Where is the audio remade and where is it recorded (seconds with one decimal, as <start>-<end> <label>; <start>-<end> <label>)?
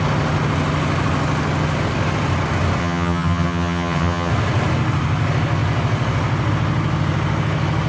0.0-2.8 recorded; 2.8-4.3 remade; 4.3-7.9 recorded